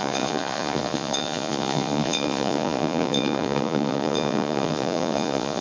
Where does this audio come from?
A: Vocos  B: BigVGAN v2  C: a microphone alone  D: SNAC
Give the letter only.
A